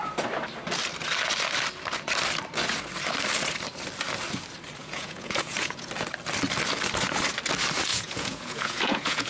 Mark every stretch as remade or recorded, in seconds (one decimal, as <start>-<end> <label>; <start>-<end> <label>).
0.0-4.8 recorded; 4.8-5.9 remade; 5.9-7.9 recorded; 7.9-9.3 remade